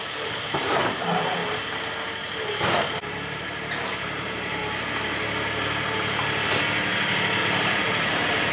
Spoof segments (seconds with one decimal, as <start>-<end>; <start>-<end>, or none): 0.0-1.4; 3.9-4.6; 7.4-8.5

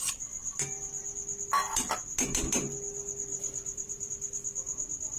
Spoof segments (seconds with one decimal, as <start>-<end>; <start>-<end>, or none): 3.3-4.1

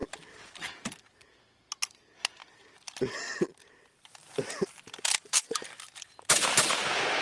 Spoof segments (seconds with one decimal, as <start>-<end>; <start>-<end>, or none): 0.0-1.0; 2.4-6.7

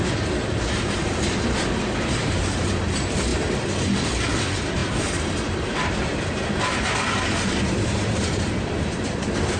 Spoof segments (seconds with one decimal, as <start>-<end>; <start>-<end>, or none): 2.2-2.8; 4.8-9.6

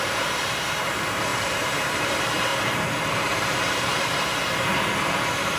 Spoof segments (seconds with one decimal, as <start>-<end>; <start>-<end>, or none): 0.0-2.5; 3.1-4.4

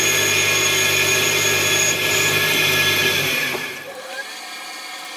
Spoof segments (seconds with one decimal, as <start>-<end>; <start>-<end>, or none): 1.1-4.2

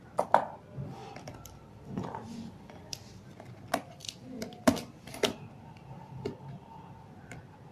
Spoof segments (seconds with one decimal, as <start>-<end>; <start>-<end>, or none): 1.0-3.3

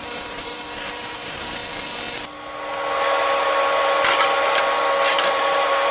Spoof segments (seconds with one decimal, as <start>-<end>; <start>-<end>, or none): 0.0-1.6; 5.1-5.9